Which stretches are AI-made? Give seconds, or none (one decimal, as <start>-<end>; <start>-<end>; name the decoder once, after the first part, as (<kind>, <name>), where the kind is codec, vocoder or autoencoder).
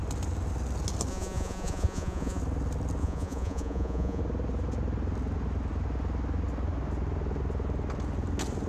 1.1-2.4 (vocoder, Vocos); 3.0-4.2